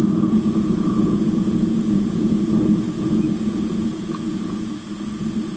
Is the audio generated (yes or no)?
yes